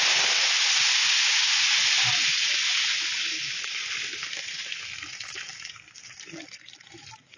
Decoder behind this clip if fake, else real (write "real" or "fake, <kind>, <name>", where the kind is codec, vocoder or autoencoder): real